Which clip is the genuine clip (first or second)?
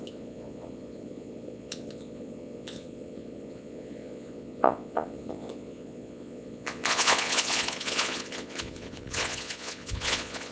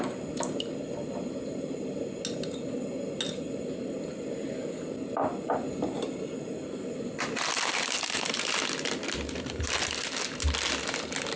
second